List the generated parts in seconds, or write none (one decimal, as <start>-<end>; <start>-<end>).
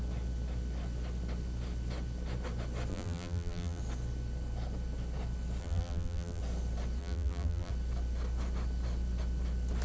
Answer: 2.9-3.8; 5.6-6.4; 7.0-7.7